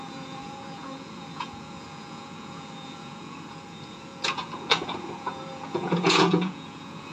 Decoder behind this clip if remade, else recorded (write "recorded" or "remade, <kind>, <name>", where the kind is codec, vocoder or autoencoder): remade, vocoder, Vocos